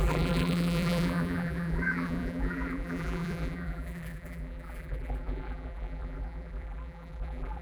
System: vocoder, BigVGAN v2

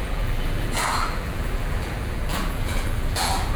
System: vocoder, BigVGAN v2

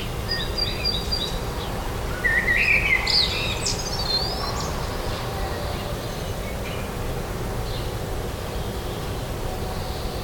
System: none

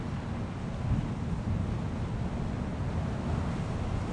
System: none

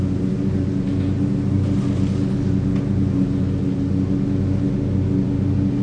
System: none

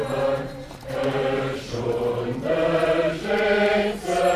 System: vocoder, BigVGAN v2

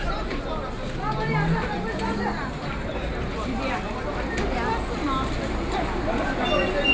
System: none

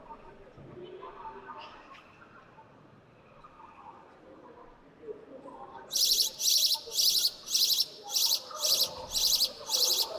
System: none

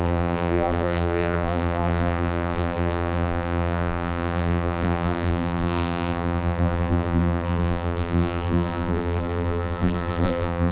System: vocoder, BigVGAN v2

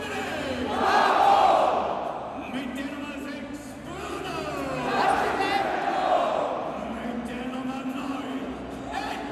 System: none